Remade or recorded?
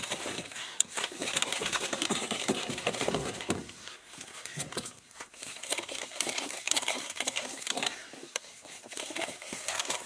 remade